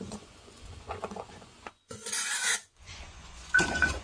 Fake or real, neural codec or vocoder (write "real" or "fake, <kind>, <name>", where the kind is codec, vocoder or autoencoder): fake, vocoder, Vocos